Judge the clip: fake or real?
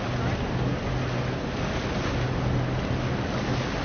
real